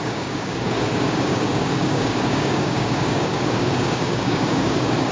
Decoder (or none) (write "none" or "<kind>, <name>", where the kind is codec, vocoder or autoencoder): codec, DAC